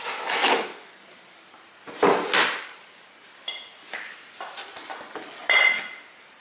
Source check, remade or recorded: recorded